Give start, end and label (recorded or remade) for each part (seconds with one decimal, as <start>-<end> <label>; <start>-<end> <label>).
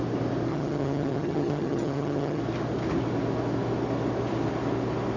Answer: 0.0-0.5 recorded; 0.5-2.4 remade; 2.4-5.2 recorded